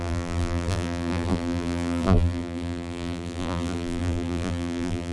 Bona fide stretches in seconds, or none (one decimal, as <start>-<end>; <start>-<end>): none